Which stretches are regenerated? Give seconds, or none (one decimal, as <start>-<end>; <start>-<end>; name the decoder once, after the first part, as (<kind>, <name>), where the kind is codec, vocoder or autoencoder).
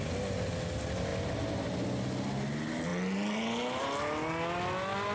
none